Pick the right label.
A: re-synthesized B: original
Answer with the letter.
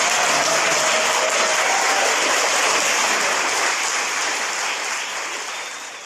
B